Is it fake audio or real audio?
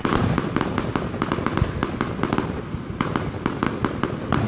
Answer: real